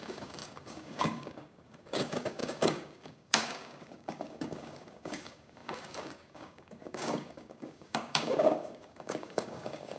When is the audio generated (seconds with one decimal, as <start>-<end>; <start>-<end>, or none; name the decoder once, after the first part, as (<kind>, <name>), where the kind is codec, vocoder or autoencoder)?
0.0-10.0 (codec, DAC)